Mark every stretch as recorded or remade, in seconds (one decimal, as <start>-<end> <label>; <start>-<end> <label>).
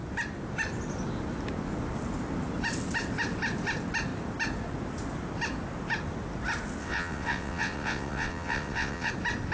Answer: 0.0-6.8 recorded; 6.8-9.1 remade; 9.1-9.5 recorded